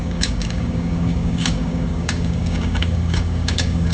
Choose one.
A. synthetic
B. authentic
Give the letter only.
A